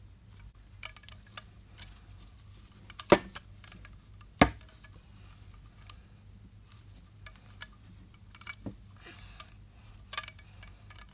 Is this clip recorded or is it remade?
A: recorded